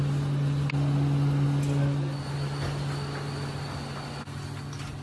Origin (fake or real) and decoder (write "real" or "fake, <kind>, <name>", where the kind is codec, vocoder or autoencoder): real